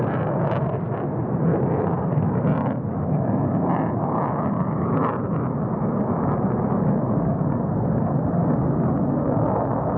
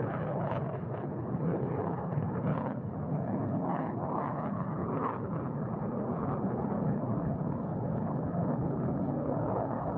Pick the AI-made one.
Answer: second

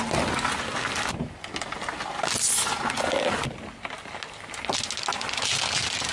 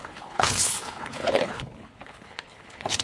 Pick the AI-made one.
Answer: second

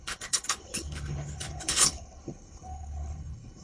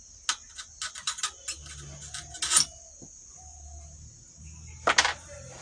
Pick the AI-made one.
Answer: first